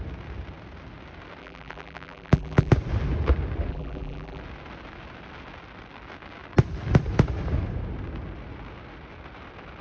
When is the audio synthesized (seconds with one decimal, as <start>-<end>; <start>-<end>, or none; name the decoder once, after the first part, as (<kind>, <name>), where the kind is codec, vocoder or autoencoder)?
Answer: 1.4-2.7 (vocoder, BigVGAN v2); 3.7-4.4